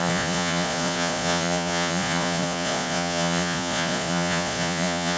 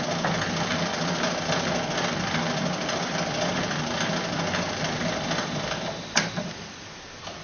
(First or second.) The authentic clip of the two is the second